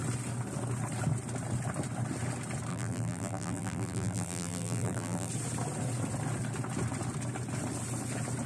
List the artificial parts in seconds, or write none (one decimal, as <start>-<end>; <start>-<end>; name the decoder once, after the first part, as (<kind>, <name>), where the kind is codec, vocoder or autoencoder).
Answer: 2.7-5.3 (vocoder, BigVGAN v2)

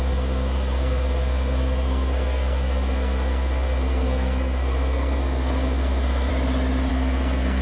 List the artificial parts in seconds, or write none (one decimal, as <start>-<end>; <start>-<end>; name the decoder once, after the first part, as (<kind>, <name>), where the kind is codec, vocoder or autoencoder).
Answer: 0.0-6.3 (codec, SNAC); 6.9-7.6

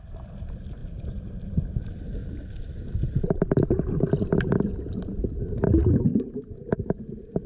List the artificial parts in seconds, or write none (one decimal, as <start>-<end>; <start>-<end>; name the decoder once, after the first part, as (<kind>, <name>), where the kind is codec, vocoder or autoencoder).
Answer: 0.8-1.6 (vocoder, BigVGAN v2); 6.1-6.7

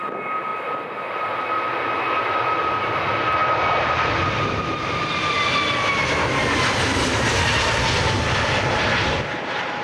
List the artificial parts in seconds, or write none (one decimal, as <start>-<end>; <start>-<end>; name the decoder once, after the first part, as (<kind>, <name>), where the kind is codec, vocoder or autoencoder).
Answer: none

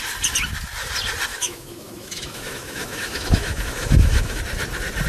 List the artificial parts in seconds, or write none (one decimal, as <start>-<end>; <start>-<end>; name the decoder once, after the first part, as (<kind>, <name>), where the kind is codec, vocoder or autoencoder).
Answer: 1.3-4.4 (autoencoder, DAC-VAE)